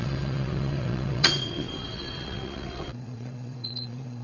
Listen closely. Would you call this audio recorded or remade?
remade